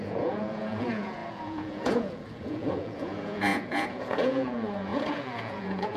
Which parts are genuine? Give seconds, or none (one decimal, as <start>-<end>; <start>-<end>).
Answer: none